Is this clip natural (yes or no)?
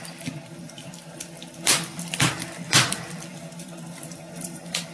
no